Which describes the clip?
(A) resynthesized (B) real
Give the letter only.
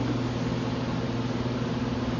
B